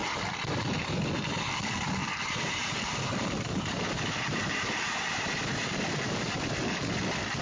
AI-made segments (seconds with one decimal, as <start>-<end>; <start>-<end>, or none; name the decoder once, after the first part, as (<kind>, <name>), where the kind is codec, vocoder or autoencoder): 2.0-6.4 (vocoder, BigVGAN v2)

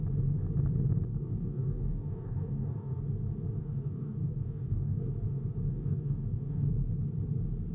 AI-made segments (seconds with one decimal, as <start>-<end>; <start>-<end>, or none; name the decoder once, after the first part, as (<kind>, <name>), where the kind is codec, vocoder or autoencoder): 1.1-3.0 (codec, DAC); 3.6-5.1; 5.7-6.7

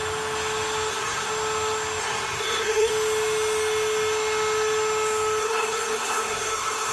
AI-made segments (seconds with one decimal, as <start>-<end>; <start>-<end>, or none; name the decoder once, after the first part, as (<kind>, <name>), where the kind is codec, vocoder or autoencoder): 0.9-1.3 (codec, SNAC); 2.0-2.9; 5.4-6.9

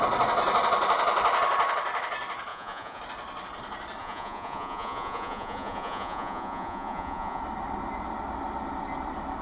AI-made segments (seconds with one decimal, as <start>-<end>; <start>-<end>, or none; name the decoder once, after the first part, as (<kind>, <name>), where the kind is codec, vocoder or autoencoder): 2.5-3.0 (vocoder, Vocos); 4.0-7.4

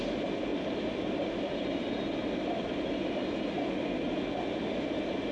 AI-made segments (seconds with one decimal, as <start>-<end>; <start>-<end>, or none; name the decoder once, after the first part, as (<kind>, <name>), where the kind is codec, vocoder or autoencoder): 0.5-3.7 (vocoder, BigVGAN v2)

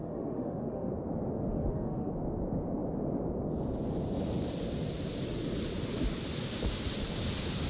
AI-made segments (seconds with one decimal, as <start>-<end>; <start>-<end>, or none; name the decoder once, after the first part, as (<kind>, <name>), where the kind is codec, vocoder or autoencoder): 0.0-0.9 (autoencoder, DAC-VAE); 1.5-2.1

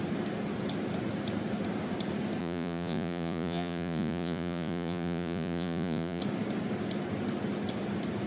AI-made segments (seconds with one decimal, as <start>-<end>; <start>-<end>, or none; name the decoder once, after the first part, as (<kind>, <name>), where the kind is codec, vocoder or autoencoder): 2.4-6.2 (vocoder, Vocos)

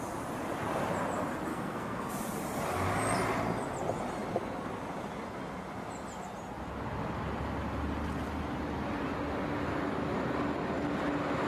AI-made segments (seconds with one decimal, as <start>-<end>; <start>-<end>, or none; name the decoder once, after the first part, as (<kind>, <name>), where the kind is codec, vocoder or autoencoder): 1.5-2.1 (codec, SNAC)